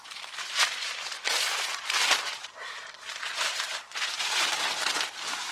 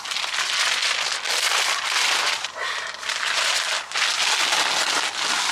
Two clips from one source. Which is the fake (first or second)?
first